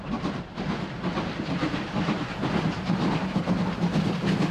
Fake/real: real